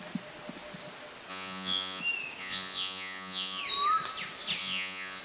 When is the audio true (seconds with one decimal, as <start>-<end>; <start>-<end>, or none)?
0.0-1.3; 2.0-2.4; 3.6-4.6